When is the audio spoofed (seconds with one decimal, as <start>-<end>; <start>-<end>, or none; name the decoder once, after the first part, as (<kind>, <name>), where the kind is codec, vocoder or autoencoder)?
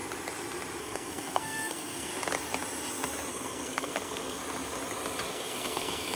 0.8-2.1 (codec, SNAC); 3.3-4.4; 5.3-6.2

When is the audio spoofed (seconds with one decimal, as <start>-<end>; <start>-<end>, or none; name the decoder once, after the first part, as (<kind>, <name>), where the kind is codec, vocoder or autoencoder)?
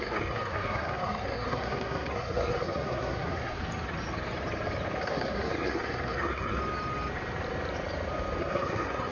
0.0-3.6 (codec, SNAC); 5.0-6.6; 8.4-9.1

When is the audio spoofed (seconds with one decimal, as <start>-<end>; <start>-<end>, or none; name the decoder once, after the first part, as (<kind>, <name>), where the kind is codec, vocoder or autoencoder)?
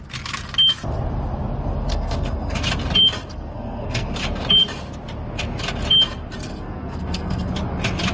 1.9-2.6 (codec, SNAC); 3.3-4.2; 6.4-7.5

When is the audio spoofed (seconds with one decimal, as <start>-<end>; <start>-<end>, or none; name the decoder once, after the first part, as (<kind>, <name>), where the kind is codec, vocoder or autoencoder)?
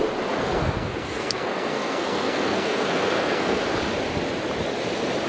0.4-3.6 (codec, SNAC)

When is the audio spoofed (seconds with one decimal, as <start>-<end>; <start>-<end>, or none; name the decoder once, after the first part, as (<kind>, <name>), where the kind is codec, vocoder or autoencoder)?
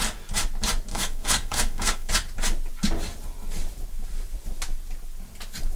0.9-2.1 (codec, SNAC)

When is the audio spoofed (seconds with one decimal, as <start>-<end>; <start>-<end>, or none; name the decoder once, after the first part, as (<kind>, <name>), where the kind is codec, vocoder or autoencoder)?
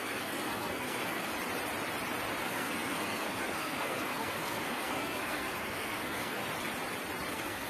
0.0-1.3 (codec, SNAC); 2.4-6.4; 7.3-7.7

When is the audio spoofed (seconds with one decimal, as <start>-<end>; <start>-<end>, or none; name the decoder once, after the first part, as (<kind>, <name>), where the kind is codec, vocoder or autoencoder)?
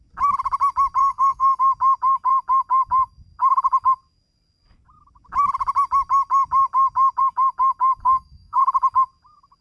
1.0-1.6 (codec, SNAC); 8.0-8.6